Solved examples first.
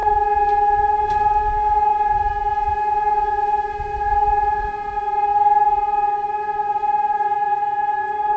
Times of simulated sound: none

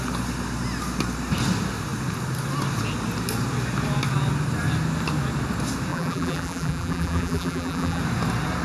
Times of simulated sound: 5.9-8.0 (vocoder, BigVGAN v2)

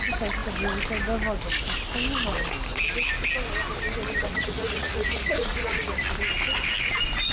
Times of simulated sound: 4.3-6.0 (vocoder, Vocos)

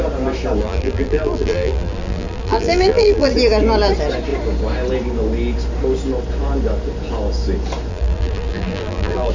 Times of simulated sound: 0.6-3.3 (vocoder, BigVGAN v2); 7.9-9.3

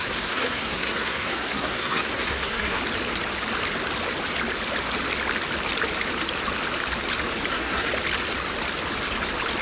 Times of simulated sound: 0.0-2.8 (codec, SNAC); 7.5-7.9

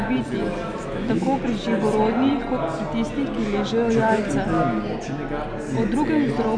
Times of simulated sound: 0.7-1.4 (autoencoder, DAC-VAE)

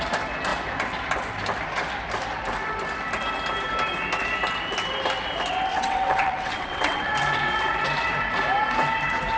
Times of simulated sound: 5.7-7.1 (vocoder, WaveNeXt)